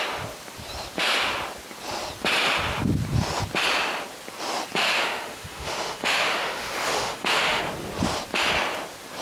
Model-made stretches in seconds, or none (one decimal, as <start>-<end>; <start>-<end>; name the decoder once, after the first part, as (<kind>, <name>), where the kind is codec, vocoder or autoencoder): 4.8-7.6 (autoencoder, DAC-VAE)